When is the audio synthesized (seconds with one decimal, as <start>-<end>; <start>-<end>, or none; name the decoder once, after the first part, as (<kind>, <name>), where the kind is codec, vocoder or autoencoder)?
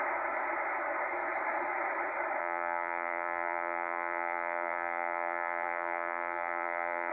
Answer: 2.4-7.1 (vocoder, BigVGAN v2)